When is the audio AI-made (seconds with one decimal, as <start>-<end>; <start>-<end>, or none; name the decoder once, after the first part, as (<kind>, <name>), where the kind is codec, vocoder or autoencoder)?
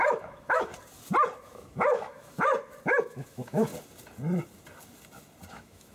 0.0-0.7 (autoencoder, DAC-VAE); 1.4-2.5; 3.0-3.7; 5.5-5.9